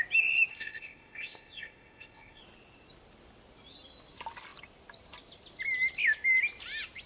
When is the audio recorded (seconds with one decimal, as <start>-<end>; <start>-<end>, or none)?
0.0-0.5; 2.4-7.1